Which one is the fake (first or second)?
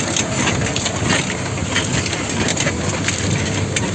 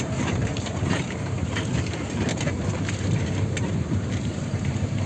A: second